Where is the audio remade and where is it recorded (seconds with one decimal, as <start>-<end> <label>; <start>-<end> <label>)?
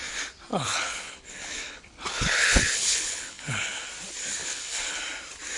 0.0-0.5 recorded; 0.5-3.9 remade; 3.9-4.4 recorded; 4.4-5.0 remade; 5.0-5.6 recorded